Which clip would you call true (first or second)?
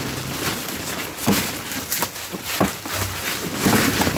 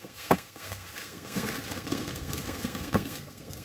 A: first